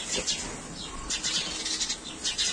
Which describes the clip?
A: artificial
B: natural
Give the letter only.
B